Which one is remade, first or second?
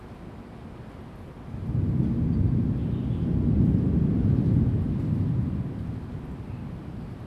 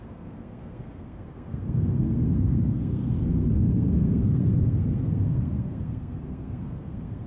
second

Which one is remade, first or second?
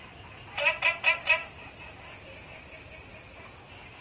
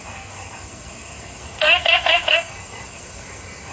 second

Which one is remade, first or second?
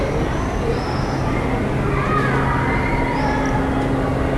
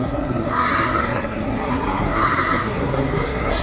second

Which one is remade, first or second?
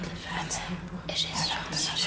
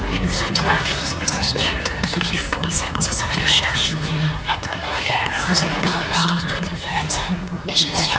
second